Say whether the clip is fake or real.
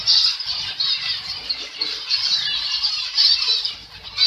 real